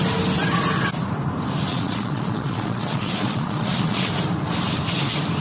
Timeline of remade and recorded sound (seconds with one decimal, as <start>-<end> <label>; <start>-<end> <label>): 0.0-1.7 recorded; 1.7-4.1 remade; 4.1-5.4 recorded